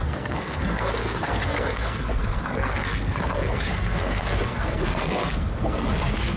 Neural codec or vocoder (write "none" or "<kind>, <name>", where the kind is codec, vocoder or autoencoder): codec, SNAC